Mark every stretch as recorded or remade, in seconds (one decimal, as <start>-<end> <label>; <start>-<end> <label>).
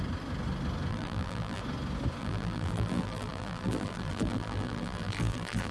0.0-0.9 recorded; 0.9-1.6 remade; 1.6-2.2 recorded; 2.2-5.7 remade